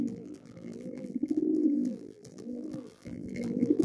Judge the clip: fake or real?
fake